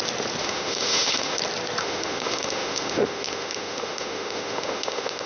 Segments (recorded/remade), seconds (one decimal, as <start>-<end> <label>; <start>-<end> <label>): 0.0-0.4 recorded; 0.4-1.4 remade; 1.4-1.8 recorded; 1.8-5.3 remade